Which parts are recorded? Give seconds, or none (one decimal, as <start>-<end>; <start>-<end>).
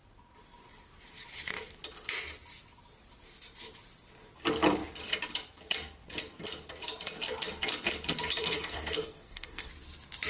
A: 0.0-8.4; 9.7-10.3